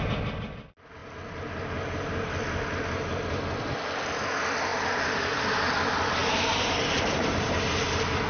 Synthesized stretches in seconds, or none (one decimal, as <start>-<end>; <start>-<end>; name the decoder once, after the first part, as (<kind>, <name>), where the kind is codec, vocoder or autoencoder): 4.7-5.7 (vocoder, BigVGAN v2); 6.2-7.7